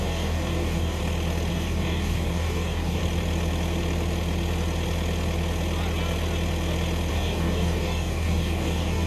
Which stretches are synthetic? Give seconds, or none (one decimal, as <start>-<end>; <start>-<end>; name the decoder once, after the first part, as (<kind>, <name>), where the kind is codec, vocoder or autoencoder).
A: 0.0-1.0 (codec, DAC); 1.5-3.0; 7.1-9.1